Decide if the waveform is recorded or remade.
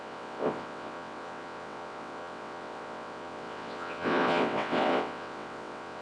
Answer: remade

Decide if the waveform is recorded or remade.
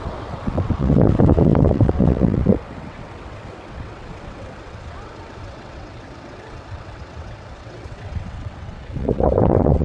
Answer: remade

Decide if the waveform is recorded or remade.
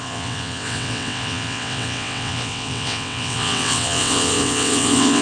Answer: remade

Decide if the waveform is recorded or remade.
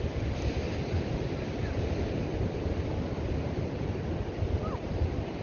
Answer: recorded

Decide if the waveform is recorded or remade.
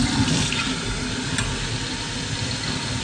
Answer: recorded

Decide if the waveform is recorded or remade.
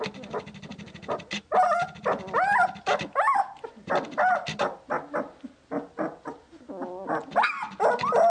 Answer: recorded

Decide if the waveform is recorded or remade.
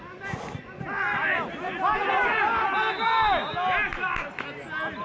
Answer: recorded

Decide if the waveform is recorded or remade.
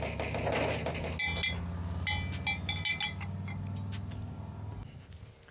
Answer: recorded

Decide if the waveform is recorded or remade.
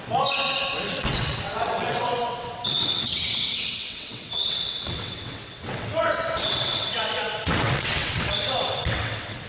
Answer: remade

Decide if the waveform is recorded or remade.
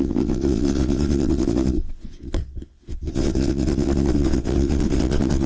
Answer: remade